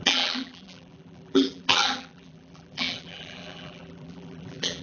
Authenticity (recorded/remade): remade